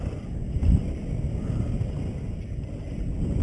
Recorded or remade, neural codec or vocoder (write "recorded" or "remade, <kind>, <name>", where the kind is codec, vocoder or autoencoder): recorded